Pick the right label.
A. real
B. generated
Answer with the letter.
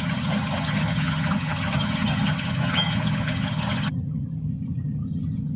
B